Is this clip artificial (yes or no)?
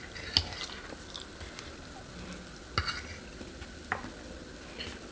no